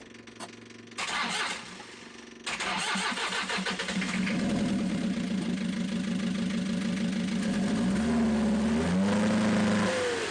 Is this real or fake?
real